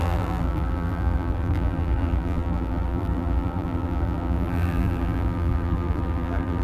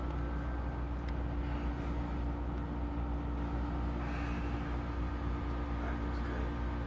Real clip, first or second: second